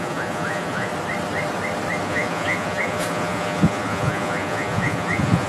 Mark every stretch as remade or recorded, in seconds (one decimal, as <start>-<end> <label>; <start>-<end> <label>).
0.0-0.9 remade; 0.9-2.0 recorded; 2.0-5.5 remade

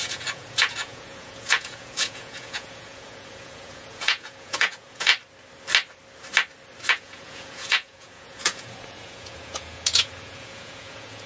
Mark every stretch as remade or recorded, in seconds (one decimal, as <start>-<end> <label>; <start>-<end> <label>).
0.0-5.1 remade; 5.1-6.9 recorded; 6.9-11.3 remade

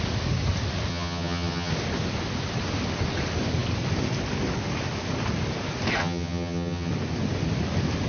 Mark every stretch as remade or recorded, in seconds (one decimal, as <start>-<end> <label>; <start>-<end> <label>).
0.0-0.9 recorded; 0.9-1.7 remade; 1.7-6.0 recorded; 6.0-6.9 remade; 6.9-8.1 recorded

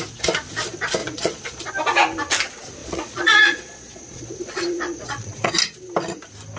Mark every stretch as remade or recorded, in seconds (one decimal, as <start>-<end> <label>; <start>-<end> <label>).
0.0-1.0 recorded; 1.0-1.7 remade; 1.7-2.8 recorded; 2.8-5.5 remade; 5.5-6.6 recorded

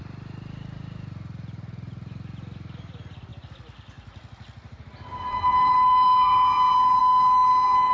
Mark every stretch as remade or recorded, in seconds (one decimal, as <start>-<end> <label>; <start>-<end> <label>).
0.0-7.9 recorded

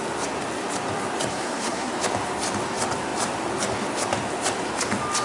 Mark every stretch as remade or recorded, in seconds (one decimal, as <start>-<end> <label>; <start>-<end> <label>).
0.0-1.3 recorded; 1.3-1.9 remade; 1.9-5.2 recorded

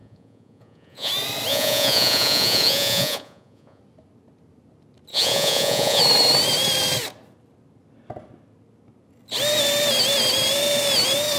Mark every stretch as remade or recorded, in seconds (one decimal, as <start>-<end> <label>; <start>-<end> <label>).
0.0-1.1 remade; 1.1-1.5 recorded; 1.5-3.8 remade; 3.8-5.1 recorded; 5.1-6.0 remade; 6.0-11.4 recorded

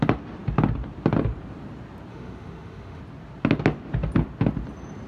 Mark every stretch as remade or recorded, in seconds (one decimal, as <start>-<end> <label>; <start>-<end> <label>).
0.0-2.1 recorded; 2.1-3.0 remade; 3.0-5.1 recorded